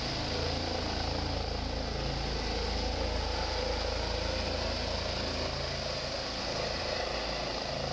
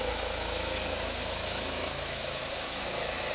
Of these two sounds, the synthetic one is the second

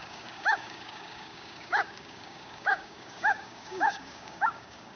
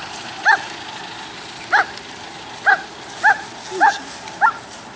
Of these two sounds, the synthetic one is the first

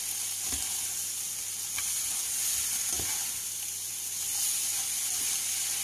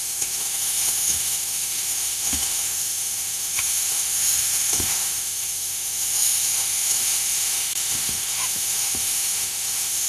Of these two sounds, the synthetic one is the second